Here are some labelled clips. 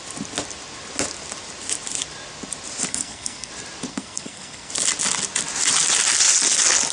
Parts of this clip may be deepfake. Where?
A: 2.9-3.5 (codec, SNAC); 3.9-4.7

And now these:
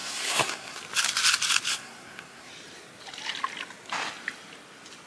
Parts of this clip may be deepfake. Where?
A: 0.0-0.8 (codec, SNAC); 1.7-2.5

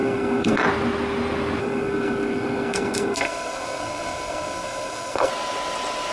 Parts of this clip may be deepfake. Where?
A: 0.0-0.6 (codec, SNAC); 1.6-5.3

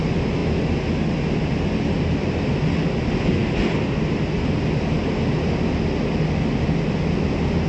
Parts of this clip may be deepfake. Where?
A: none

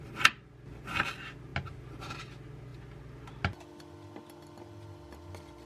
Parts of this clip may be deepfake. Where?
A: none

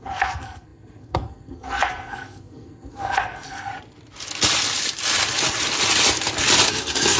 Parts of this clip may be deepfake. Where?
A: 0.0-3.7 (codec, SNAC); 6.7-7.2